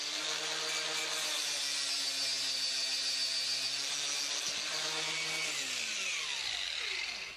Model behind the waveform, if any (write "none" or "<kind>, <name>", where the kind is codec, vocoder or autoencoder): none